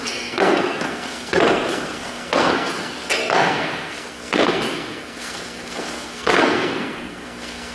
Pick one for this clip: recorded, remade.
remade